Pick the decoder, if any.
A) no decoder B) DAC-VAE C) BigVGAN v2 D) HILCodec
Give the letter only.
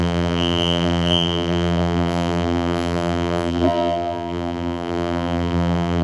C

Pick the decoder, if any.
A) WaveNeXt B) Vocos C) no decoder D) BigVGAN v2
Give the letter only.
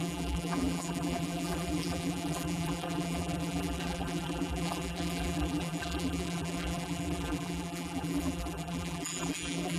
D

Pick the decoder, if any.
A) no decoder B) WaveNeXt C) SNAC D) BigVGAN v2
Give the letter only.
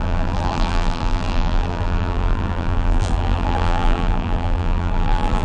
D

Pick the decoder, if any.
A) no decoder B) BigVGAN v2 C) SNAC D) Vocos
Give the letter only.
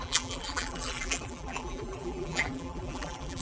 B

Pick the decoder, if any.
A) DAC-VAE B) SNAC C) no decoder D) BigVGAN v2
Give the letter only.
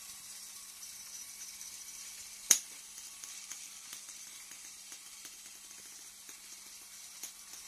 D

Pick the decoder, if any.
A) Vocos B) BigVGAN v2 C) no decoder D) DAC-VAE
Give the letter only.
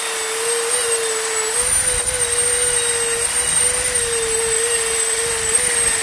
C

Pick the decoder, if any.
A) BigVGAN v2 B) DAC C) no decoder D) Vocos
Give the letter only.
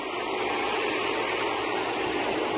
A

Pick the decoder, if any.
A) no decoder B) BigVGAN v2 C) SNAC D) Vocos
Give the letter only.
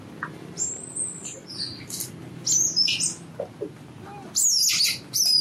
A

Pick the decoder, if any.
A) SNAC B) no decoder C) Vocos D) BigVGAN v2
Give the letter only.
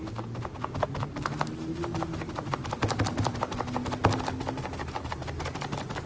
B